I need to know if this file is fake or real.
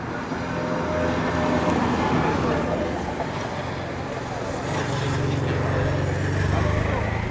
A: real